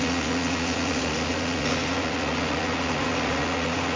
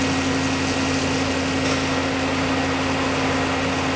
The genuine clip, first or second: second